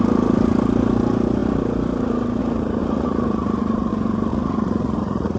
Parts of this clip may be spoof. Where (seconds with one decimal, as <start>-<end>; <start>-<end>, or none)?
2.8-3.9; 4.3-5.4